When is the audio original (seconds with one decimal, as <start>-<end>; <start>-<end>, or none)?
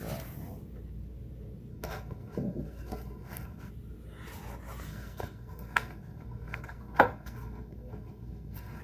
0.0-1.7; 3.7-4.9